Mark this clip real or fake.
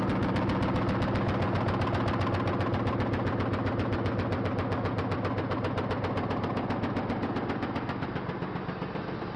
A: real